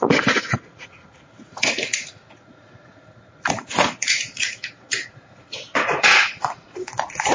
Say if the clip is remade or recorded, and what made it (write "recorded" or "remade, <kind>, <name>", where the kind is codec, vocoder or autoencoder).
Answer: remade, vocoder, Vocos